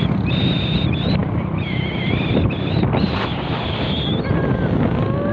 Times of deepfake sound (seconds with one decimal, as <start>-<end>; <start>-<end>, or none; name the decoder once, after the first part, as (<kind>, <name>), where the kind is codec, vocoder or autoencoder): none